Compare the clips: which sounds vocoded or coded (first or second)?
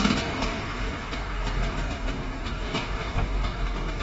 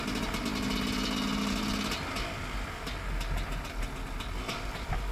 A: first